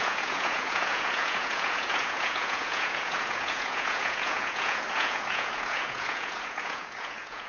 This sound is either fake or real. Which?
fake